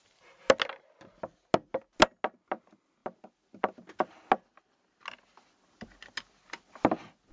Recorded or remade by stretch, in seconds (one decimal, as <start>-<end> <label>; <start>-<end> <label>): 0.0-7.3 recorded